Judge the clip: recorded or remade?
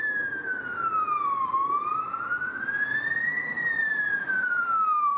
remade